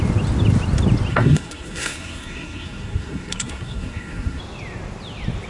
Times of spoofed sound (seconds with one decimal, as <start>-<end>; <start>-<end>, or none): 1.1-4.4